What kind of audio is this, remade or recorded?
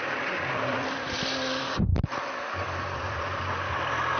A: remade